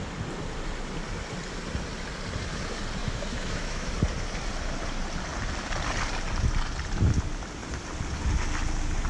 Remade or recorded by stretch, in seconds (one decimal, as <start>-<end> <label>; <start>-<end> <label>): 0.0-3.0 recorded; 3.0-3.9 remade; 3.9-9.1 recorded